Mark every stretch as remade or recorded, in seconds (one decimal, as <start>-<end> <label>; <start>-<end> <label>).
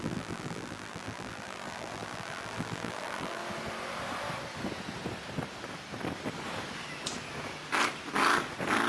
0.0-3.4 remade; 3.4-8.9 recorded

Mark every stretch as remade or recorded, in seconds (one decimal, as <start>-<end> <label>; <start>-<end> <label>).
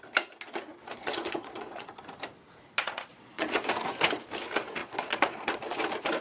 0.0-0.8 recorded; 0.8-2.0 remade; 2.0-2.8 recorded; 2.8-3.7 remade; 3.7-4.8 recorded; 4.8-5.8 remade; 5.8-6.2 recorded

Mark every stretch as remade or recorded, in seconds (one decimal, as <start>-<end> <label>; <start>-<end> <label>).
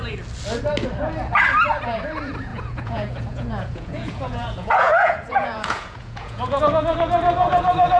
0.0-2.5 recorded; 2.5-6.6 remade; 6.6-8.0 recorded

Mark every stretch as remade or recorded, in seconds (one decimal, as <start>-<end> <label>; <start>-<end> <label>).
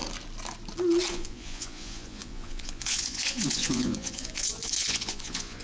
0.0-1.1 recorded; 1.1-5.6 remade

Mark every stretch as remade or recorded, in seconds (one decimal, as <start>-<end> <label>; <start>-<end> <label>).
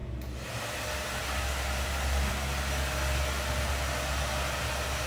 0.0-5.1 recorded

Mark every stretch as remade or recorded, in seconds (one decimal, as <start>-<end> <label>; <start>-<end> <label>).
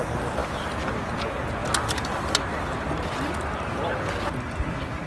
0.0-5.1 recorded